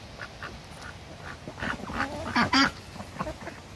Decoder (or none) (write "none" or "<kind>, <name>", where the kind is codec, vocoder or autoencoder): none